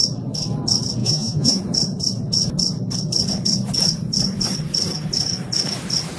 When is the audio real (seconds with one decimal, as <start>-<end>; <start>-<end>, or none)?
0.0-1.0; 1.6-6.2